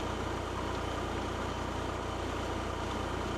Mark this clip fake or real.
real